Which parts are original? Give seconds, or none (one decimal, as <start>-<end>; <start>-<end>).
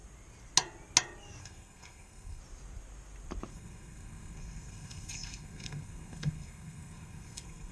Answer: 0.0-1.4; 2.4-3.5